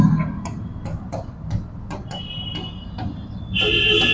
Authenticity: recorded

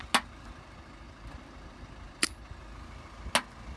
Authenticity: recorded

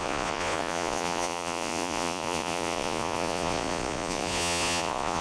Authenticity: remade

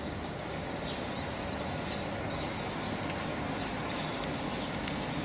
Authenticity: recorded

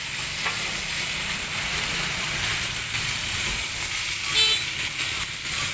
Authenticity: recorded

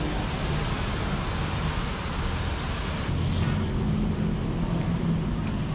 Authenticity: recorded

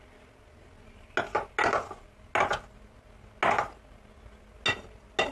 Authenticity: recorded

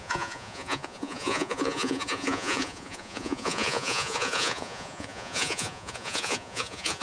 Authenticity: remade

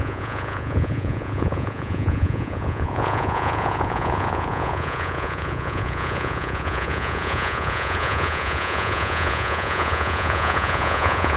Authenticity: remade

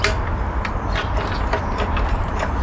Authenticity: recorded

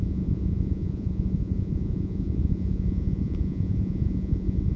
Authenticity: remade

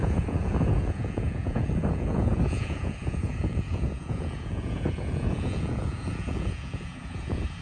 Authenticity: remade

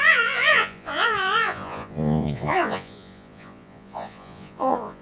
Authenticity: remade